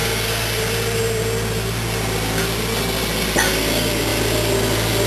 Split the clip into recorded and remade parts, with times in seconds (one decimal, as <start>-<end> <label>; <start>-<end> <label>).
0.0-5.1 recorded